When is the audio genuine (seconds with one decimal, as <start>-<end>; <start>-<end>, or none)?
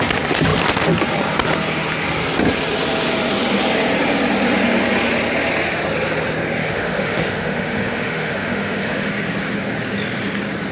0.0-6.6; 9.1-10.7